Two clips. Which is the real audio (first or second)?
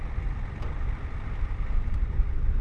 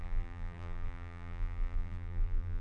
first